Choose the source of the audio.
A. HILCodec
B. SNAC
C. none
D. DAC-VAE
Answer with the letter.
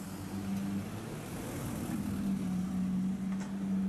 C